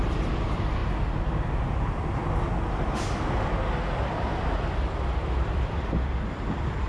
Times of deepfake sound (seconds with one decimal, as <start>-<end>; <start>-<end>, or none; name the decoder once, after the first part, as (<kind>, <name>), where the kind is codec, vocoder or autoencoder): 0.0-0.8 (vocoder, BigVGAN v2); 1.7-2.2; 5.2-6.9